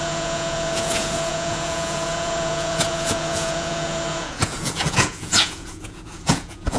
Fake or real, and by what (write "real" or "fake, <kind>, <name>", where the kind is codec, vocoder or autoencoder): fake, vocoder, Vocos